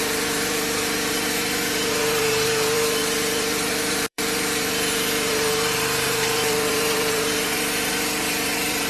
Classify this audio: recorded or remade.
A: remade